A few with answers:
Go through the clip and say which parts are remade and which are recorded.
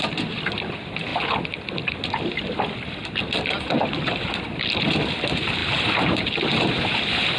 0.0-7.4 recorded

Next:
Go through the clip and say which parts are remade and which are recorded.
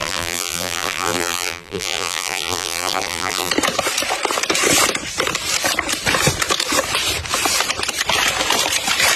0.0-3.5 remade; 3.5-9.2 recorded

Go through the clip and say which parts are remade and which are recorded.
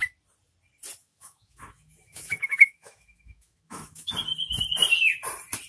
0.0-1.0 recorded; 1.0-4.1 remade; 4.1-5.7 recorded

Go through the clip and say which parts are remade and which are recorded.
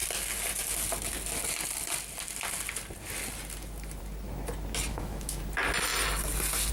0.0-4.9 recorded; 4.9-5.4 remade; 5.4-6.7 recorded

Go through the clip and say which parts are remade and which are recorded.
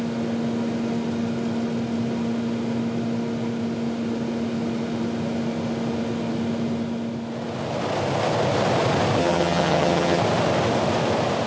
0.0-9.2 recorded; 9.2-10.2 remade; 10.2-11.5 recorded